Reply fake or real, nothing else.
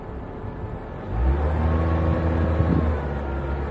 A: real